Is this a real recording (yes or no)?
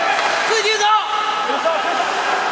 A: yes